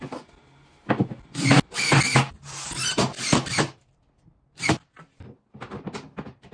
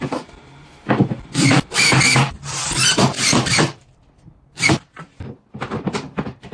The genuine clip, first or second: first